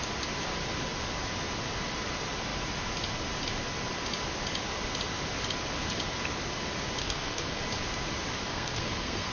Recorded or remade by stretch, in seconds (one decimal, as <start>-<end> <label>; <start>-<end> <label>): 0.0-7.0 recorded; 7.0-7.6 remade; 7.6-8.5 recorded; 8.5-9.3 remade